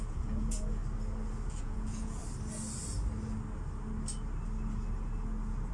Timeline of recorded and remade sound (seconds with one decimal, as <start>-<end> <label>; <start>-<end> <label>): 0.0-0.8 remade; 0.8-1.6 recorded; 1.6-2.2 remade; 2.2-5.7 recorded